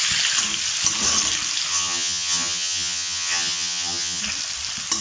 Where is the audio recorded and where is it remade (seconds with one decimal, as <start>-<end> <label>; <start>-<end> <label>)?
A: 0.0-1.7 recorded; 1.7-4.2 remade; 4.2-5.0 recorded